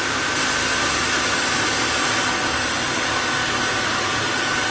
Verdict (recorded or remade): recorded